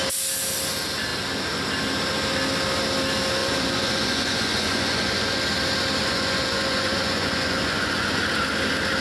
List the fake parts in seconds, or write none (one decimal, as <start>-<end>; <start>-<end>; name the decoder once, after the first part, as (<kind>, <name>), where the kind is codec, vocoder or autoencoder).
3.4-5.4 (vocoder, Vocos); 6.0-8.2